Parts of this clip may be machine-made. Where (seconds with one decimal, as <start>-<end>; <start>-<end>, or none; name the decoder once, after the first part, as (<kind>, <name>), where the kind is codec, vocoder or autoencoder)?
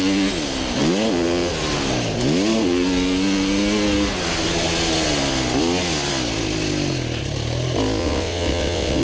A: 8.0-9.0 (vocoder, WaveNeXt)